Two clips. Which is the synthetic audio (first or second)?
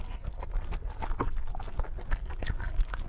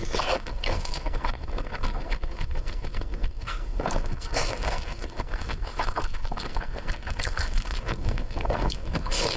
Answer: second